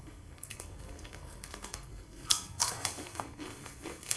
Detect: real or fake fake